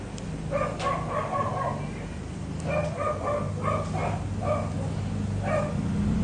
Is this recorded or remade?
recorded